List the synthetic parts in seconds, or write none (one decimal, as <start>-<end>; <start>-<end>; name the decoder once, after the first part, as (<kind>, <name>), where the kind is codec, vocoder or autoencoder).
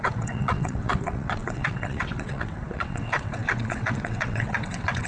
0.0-5.1 (vocoder, WaveNeXt)